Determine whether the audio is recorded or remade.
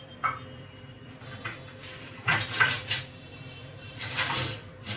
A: remade